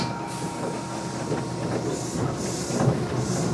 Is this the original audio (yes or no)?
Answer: yes